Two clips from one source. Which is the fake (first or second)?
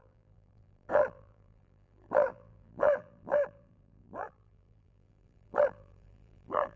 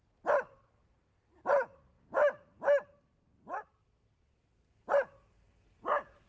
first